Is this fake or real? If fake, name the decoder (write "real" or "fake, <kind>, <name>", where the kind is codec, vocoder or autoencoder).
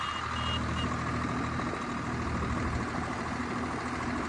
real